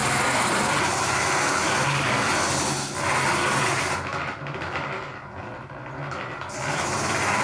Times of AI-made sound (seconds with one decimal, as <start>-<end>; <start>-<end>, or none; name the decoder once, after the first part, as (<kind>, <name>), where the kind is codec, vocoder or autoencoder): none